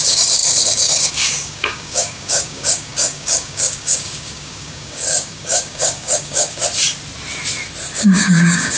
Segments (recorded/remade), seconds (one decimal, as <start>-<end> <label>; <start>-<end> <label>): 0.0-6.6 remade; 6.6-7.9 recorded; 7.9-8.8 remade